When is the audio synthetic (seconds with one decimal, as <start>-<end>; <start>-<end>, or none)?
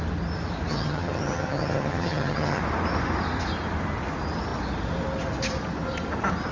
0.7-2.6